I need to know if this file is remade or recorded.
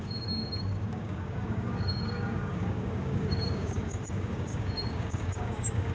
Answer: remade